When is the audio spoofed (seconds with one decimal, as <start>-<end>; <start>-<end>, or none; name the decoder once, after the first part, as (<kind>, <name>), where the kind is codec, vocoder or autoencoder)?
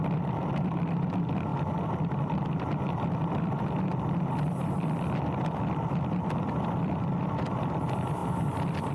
0.5-1.1 (vocoder, BigVGAN v2)